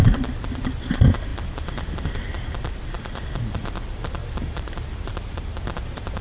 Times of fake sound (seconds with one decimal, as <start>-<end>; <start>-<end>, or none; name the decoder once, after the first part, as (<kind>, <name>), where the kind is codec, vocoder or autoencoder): 4.2-6.2 (vocoder, BigVGAN v2)